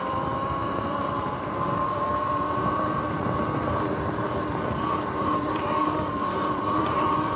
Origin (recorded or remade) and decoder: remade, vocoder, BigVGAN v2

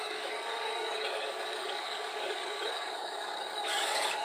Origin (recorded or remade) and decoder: remade, codec, DAC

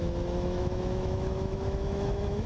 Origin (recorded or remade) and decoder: remade, autoencoder, DAC-VAE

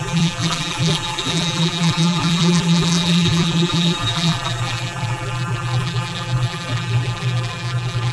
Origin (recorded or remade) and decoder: remade, vocoder, BigVGAN v2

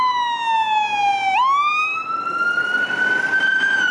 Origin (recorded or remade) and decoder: recorded